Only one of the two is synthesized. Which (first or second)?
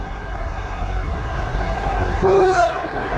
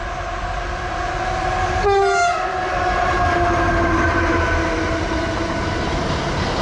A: first